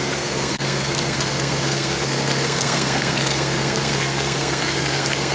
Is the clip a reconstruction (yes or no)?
yes